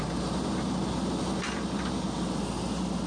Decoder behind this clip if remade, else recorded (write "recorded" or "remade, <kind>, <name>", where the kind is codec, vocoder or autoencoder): recorded